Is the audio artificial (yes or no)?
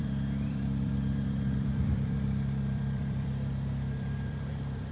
yes